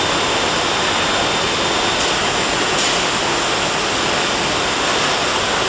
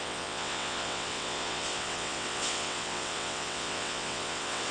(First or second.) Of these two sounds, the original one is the first